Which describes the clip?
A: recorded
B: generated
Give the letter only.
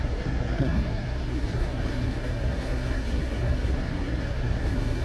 B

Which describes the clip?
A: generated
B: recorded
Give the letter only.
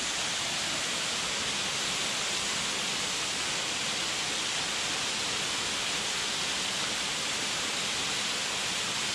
B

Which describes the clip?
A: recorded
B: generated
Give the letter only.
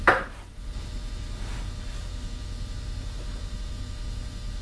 B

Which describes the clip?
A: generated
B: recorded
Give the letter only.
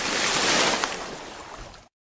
B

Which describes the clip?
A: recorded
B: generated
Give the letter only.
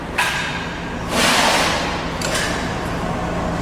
A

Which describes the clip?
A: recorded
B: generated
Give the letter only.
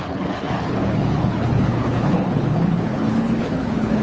B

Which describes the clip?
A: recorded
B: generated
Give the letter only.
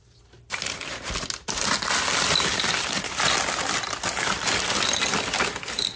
A